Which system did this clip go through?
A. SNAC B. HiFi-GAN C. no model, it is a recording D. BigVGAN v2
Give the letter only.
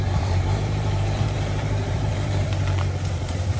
D